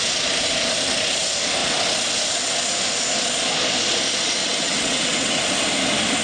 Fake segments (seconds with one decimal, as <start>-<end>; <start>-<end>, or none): 4.4-5.4